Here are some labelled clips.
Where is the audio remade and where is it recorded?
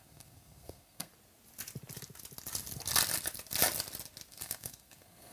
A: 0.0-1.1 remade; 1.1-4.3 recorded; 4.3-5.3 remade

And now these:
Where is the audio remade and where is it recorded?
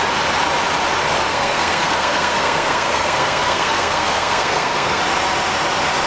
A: 0.0-1.3 recorded; 1.3-5.0 remade; 5.0-6.1 recorded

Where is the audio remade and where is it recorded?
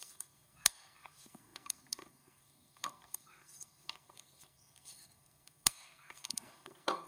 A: 0.0-7.1 remade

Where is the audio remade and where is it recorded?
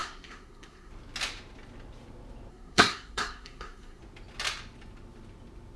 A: 0.0-0.9 remade; 0.9-2.5 recorded; 2.5-4.0 remade; 4.0-5.8 recorded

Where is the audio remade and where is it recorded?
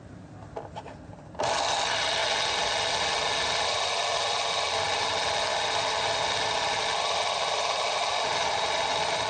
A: 0.0-9.3 recorded